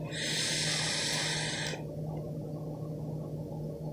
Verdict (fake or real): real